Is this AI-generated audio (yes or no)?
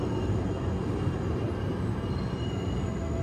no